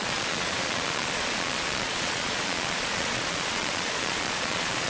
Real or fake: fake